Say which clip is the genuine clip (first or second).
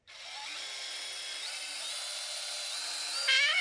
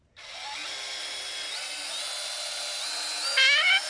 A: second